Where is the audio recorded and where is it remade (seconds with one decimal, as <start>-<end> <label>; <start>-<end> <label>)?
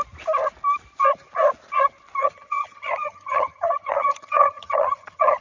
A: 0.0-2.2 recorded; 2.2-5.4 remade